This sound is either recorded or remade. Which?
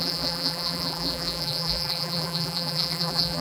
remade